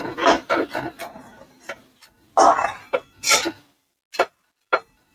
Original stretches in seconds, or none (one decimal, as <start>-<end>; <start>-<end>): 0.0-5.1